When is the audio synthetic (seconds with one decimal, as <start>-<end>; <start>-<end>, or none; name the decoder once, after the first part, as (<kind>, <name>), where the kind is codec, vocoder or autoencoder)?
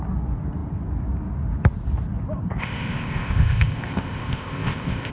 2.6-5.1 (codec, ZipCodec)